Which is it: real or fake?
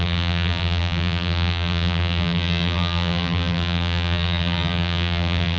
fake